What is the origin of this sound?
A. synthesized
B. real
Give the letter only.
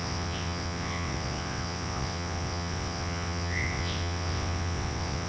A